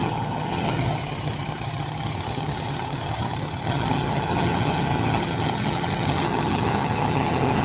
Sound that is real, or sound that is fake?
fake